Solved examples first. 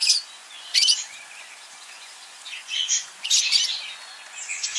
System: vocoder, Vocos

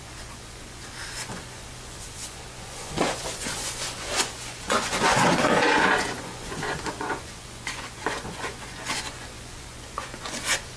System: vocoder, Vocos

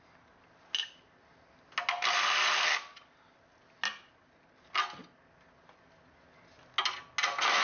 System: none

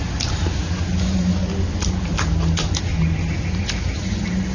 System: none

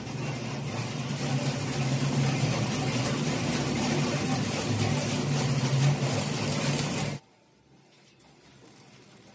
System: none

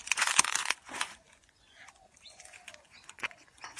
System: vocoder, Vocos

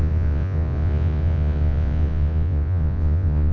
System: vocoder, Vocos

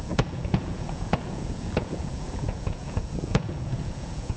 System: vocoder, Vocos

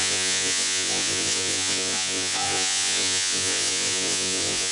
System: vocoder, Vocos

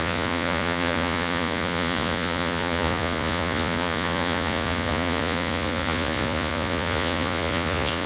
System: vocoder, Vocos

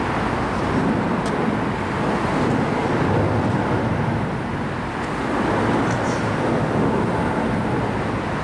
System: none